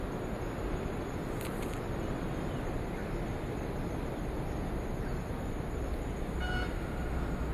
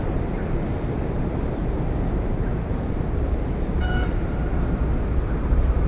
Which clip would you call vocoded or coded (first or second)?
second